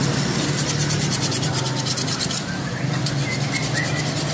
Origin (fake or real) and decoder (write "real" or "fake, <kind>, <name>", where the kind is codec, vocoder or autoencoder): real